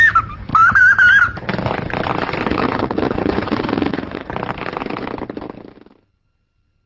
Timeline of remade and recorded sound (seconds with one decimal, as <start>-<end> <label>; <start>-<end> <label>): 0.0-2.5 recorded; 2.5-4.3 remade; 4.3-6.9 recorded